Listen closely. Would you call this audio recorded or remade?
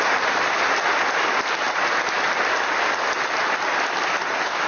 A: recorded